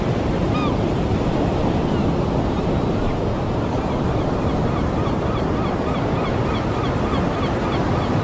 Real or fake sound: real